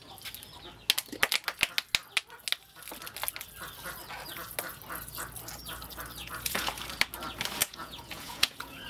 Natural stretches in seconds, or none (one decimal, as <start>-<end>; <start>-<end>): 0.0-6.2; 6.7-7.6